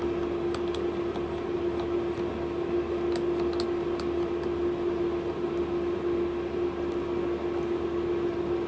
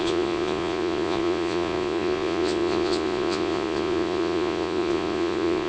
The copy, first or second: second